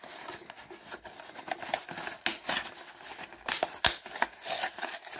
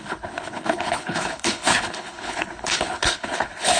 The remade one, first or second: second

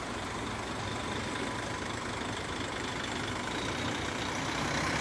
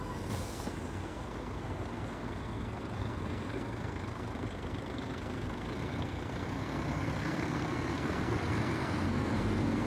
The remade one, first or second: second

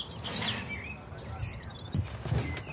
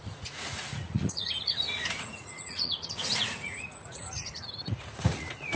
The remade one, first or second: second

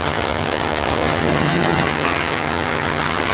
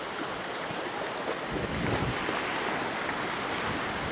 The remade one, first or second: first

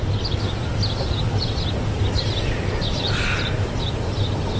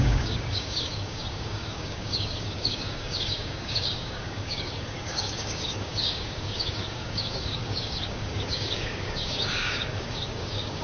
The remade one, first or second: second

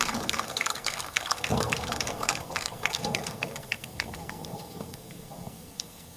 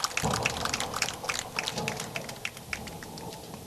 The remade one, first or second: first